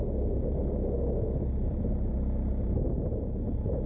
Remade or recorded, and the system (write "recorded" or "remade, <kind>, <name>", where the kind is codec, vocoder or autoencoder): recorded